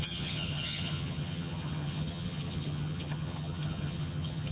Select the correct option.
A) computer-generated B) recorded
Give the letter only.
A